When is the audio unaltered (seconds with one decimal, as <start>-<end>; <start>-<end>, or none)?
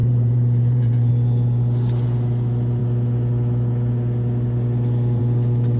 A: 1.1-5.8